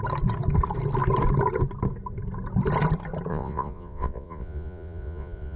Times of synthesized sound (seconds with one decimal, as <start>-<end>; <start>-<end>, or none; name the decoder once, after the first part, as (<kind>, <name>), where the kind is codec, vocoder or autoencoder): 3.3-5.6 (vocoder, Vocos)